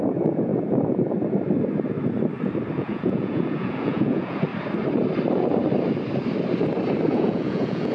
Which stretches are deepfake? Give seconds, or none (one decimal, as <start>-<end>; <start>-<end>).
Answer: 0.0-0.5; 2.7-4.5; 7.1-7.9